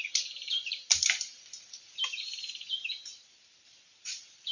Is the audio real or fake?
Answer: fake